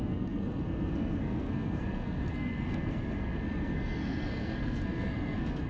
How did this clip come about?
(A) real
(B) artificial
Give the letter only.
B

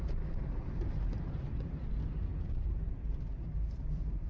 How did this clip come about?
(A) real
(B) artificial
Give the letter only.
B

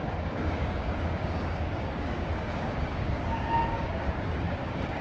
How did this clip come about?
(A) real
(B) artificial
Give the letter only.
B